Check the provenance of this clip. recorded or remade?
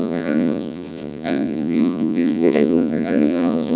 remade